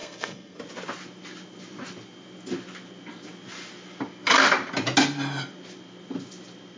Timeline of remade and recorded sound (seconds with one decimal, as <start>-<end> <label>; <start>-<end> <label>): 0.0-0.6 remade; 0.6-6.8 recorded

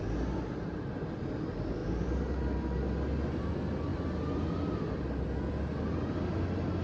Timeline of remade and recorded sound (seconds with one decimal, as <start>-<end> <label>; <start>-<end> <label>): 0.0-6.8 recorded

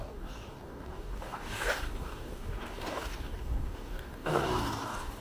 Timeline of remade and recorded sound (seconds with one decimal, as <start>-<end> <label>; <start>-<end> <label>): 0.0-5.2 remade

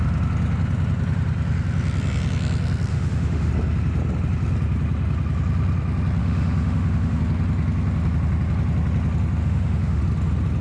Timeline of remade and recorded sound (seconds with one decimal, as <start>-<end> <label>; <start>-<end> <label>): 0.0-2.9 recorded; 2.9-3.5 remade; 3.5-6.2 recorded; 6.2-7.2 remade; 7.2-9.4 recorded; 9.4-10.0 remade; 10.0-10.6 recorded